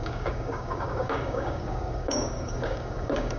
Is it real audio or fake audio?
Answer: fake